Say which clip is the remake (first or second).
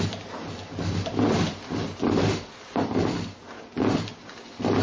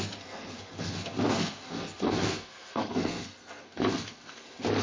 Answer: second